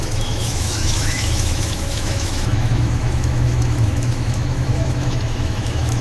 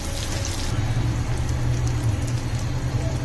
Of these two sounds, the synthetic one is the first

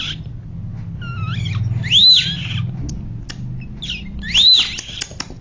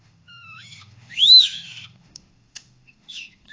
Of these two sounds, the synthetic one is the second